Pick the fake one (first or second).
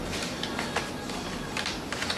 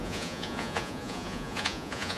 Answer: second